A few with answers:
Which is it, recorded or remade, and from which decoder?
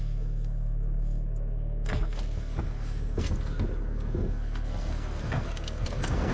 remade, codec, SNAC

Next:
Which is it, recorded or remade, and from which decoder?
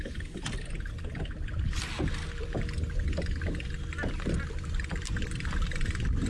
recorded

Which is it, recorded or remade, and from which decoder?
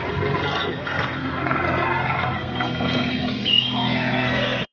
remade, codec, SNAC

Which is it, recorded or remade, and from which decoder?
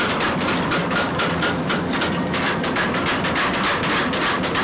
remade, vocoder, BigVGAN v2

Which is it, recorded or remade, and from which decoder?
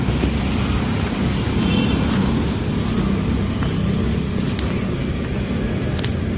recorded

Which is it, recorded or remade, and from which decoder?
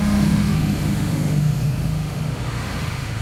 remade, autoencoder, DAC-VAE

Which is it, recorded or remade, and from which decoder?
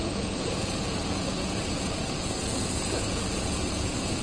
remade, vocoder, Vocos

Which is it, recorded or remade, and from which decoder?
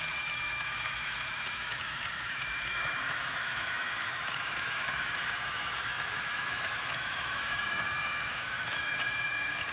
remade, autoencoder, DAC-VAE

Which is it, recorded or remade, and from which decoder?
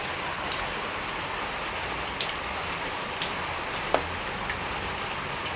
recorded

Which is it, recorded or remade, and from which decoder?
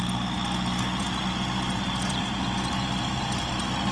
recorded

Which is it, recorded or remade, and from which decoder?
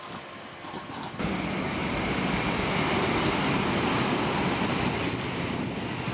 recorded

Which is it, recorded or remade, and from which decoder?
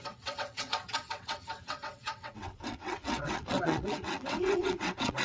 remade, vocoder, WaveNeXt